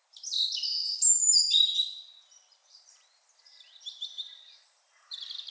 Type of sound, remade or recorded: remade